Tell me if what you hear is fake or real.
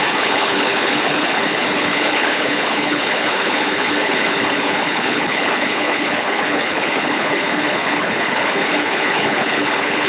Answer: fake